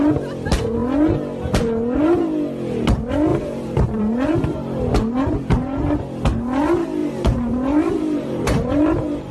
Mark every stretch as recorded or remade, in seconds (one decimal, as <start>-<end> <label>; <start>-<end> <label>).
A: 0.0-3.3 recorded; 3.3-4.0 remade; 4.0-7.0 recorded; 7.0-9.3 remade